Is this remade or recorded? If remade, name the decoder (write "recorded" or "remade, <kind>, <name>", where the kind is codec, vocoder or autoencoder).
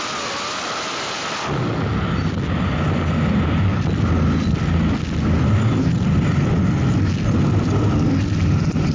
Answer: recorded